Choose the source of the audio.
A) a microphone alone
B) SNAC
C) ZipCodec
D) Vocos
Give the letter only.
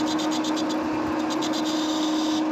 A